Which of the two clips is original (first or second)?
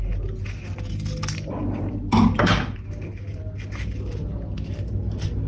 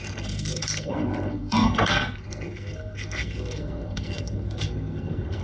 first